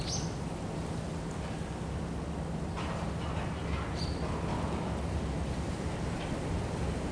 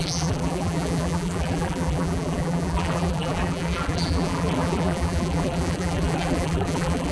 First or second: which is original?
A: first